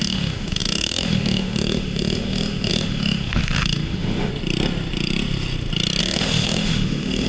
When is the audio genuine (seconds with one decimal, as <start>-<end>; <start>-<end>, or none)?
4.3-6.0